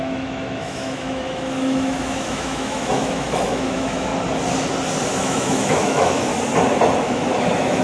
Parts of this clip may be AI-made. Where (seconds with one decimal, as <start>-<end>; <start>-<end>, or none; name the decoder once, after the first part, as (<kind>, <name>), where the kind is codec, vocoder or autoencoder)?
0.0-4.1 (autoencoder, DAC-VAE); 5.1-6.3; 7.0-7.8

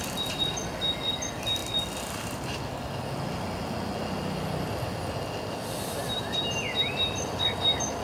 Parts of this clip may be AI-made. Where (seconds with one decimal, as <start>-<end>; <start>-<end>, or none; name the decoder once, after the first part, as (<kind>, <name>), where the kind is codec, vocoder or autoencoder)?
6.0-7.2 (vocoder, BigVGAN v2)